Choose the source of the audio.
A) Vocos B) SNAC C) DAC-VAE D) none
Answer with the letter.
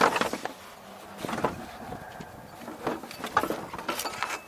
D